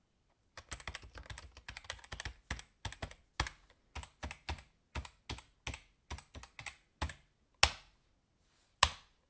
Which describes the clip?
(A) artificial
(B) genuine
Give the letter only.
B